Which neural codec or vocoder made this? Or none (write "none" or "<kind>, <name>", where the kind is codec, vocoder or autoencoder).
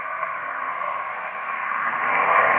codec, SNAC